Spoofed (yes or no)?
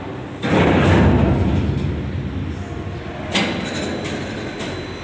no